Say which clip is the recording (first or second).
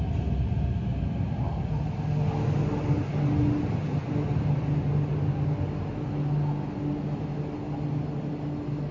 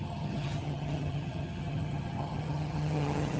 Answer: first